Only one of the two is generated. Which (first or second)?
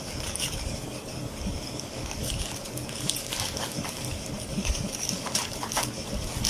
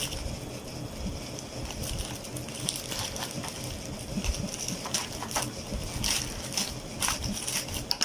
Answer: first